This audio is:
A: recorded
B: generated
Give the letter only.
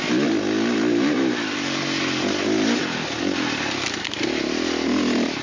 A